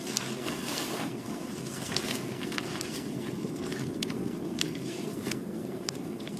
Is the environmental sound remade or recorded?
remade